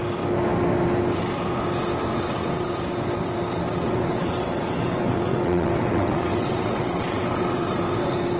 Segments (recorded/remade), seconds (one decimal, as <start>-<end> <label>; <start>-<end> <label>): 0.0-2.1 recorded; 2.1-2.7 remade; 2.7-3.6 recorded; 3.6-7.8 remade; 7.8-8.4 recorded